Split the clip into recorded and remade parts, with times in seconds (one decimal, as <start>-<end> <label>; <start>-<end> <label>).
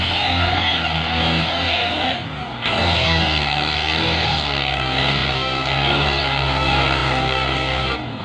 0.0-8.2 remade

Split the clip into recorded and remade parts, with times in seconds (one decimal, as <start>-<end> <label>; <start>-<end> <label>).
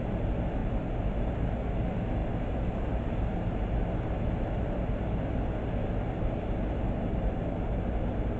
0.0-8.4 recorded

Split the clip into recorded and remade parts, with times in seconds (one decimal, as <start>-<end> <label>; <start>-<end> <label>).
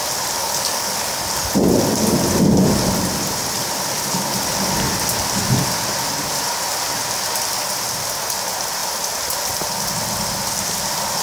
0.0-0.4 recorded; 0.4-1.3 remade; 1.3-11.2 recorded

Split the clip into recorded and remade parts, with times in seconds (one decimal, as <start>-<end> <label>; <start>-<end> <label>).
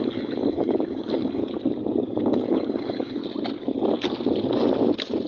0.0-1.4 remade; 1.4-2.2 recorded; 2.2-3.2 remade; 3.2-5.3 recorded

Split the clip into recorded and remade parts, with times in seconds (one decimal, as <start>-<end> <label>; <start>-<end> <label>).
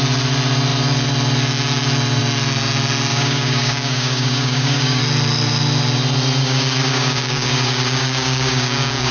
0.0-3.1 recorded; 3.1-5.0 remade; 5.0-6.4 recorded; 6.4-9.1 remade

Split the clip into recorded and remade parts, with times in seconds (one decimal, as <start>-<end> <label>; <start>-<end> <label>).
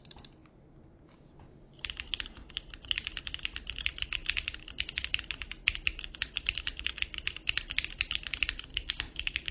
0.0-8.7 recorded; 8.7-9.5 remade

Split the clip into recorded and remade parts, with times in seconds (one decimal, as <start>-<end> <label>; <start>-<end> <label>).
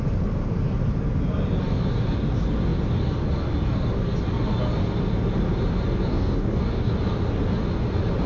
0.0-6.1 recorded; 6.1-6.9 remade; 6.9-8.3 recorded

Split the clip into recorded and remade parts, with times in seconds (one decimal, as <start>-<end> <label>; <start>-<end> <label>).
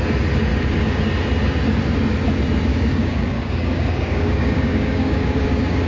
0.0-0.5 recorded; 0.5-1.0 remade; 1.0-2.7 recorded; 2.7-5.9 remade